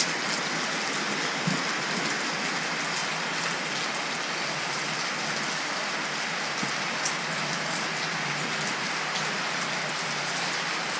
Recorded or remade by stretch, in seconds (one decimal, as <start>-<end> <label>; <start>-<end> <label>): 0.0-11.0 recorded